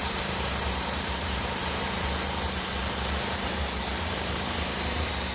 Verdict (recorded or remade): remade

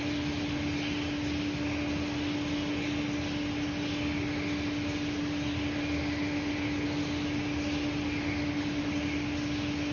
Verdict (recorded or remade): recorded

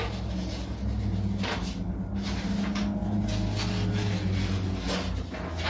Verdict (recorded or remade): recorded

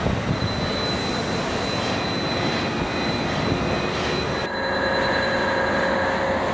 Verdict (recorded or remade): recorded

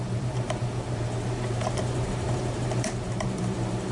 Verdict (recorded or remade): remade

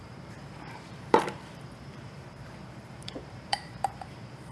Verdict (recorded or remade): remade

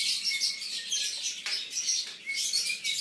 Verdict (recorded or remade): recorded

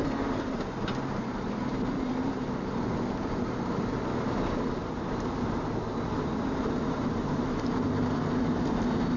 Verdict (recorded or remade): remade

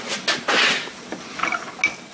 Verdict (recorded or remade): recorded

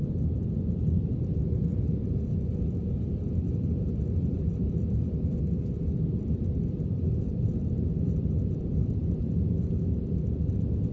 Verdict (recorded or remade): remade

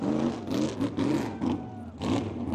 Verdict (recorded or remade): recorded